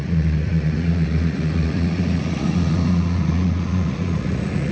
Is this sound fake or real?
fake